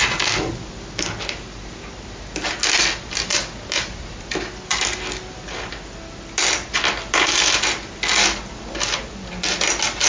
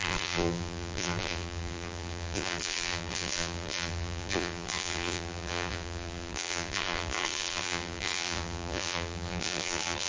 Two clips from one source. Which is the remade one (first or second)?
second